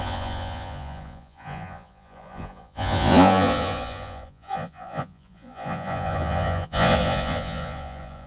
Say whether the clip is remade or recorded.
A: remade